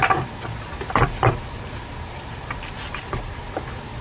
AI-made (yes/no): no